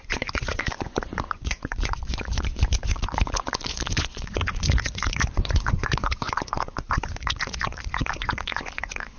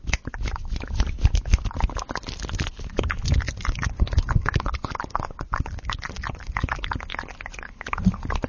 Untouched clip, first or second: second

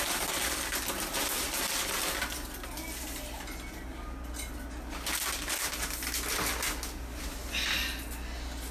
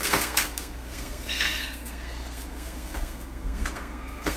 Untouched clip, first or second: first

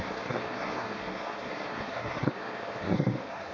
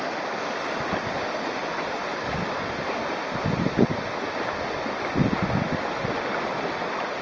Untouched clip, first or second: second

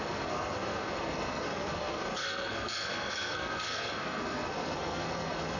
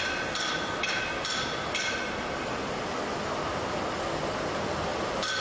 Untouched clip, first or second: second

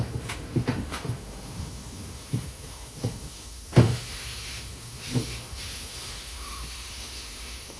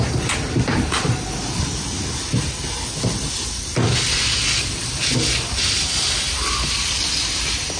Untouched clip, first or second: second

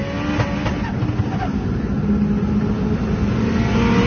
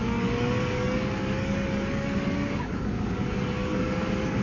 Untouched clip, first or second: first